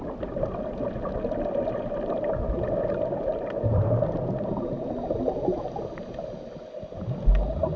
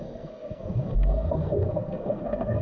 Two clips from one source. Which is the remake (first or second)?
second